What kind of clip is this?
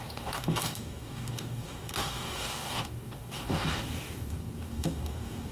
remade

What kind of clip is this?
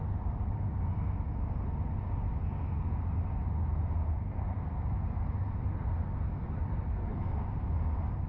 recorded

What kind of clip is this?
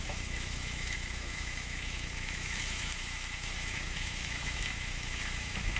remade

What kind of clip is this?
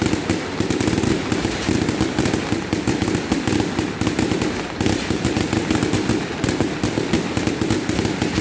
recorded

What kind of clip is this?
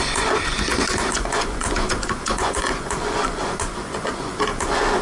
remade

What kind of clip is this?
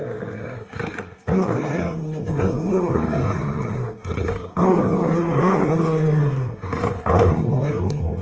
remade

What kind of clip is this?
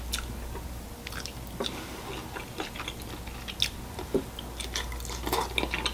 recorded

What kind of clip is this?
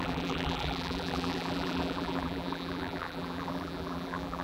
remade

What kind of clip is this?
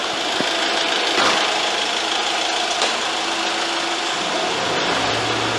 recorded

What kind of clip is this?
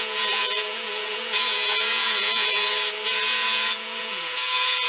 remade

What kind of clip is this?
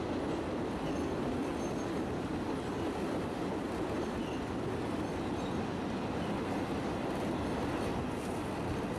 recorded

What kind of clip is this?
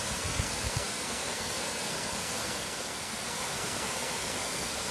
remade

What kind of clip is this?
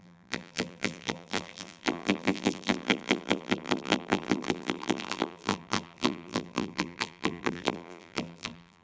remade